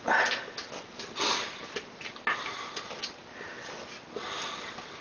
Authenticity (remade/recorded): recorded